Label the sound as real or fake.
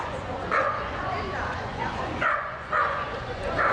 fake